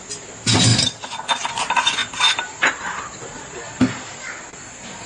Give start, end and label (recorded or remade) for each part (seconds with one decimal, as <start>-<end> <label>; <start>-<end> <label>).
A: 0.0-0.7 recorded; 0.7-1.5 remade; 1.5-2.0 recorded; 2.0-4.3 remade; 4.3-5.1 recorded